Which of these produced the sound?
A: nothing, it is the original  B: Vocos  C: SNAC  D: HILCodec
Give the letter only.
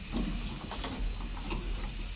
A